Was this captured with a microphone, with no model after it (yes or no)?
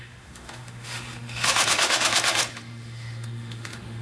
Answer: no